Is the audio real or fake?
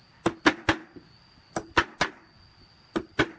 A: real